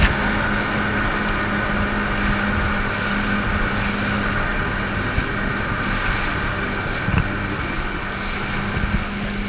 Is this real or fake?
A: real